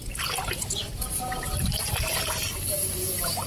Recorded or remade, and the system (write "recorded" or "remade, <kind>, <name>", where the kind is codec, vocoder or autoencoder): recorded